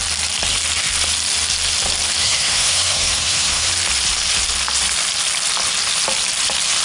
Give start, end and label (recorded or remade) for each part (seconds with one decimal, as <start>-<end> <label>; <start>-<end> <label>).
0.0-2.2 recorded; 2.2-3.7 remade; 3.7-6.8 recorded